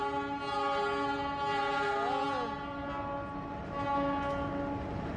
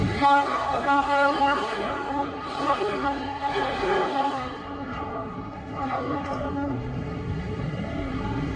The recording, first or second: first